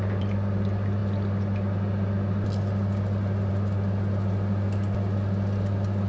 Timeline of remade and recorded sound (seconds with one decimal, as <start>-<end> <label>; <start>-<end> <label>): 0.0-6.1 recorded

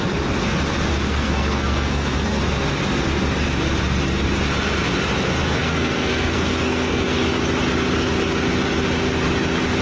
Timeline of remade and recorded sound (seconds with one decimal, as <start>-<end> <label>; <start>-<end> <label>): 0.0-0.9 recorded; 0.9-2.4 remade; 2.4-5.6 recorded; 5.6-7.2 remade; 7.2-9.8 recorded

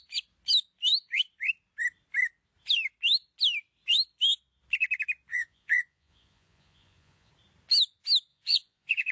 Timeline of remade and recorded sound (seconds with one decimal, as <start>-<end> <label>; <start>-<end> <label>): 0.0-5.3 recorded; 5.3-7.3 remade; 7.3-8.3 recorded; 8.3-9.1 remade